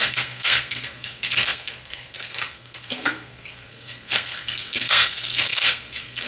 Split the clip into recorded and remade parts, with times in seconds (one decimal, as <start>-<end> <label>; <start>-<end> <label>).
0.0-6.3 remade